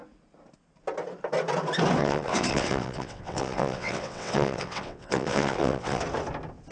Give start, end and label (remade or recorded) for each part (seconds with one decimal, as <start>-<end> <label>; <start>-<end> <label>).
0.0-2.0 recorded; 2.0-6.0 remade; 6.0-6.7 recorded